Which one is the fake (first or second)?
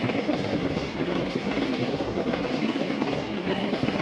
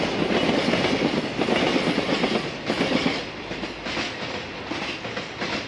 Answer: first